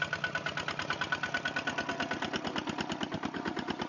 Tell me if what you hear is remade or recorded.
recorded